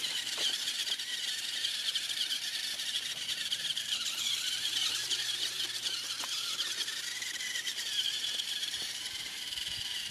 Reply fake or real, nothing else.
fake